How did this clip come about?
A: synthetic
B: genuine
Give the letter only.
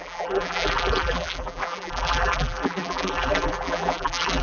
A